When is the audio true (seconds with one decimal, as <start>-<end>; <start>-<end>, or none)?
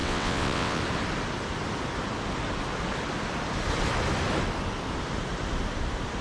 0.8-6.2